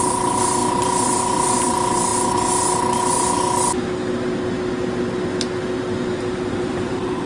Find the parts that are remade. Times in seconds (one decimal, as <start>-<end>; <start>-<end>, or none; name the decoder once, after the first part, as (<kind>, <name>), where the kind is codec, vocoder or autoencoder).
0.0-2.1 (vocoder, BigVGAN v2); 6.5-7.3